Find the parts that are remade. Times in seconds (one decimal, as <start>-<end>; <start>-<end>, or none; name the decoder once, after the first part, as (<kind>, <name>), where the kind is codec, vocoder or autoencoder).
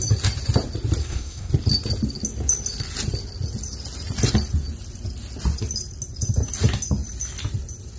1.0-1.5 (codec, SNAC)